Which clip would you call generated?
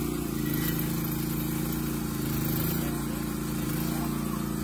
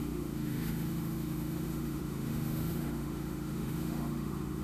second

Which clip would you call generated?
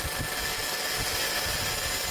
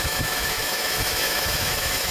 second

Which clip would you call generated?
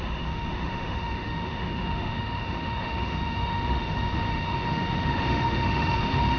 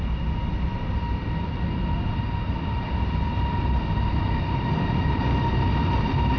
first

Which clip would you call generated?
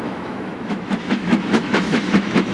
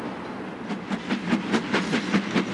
first